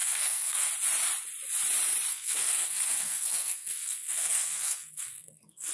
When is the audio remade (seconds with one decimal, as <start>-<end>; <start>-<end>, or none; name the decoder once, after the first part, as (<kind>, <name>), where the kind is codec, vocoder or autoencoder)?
0.0-0.7 (codec, SNAC); 2.1-5.7